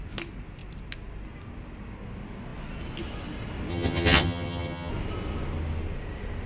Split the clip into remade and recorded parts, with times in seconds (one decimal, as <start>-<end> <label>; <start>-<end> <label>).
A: 0.0-3.7 recorded; 3.7-4.9 remade; 4.9-6.5 recorded